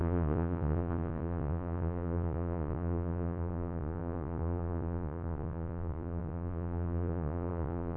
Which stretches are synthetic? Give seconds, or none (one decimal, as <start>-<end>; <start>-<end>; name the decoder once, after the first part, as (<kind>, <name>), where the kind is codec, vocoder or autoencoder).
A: 0.0-8.0 (vocoder, Vocos)